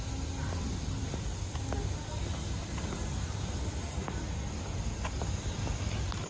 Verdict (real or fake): real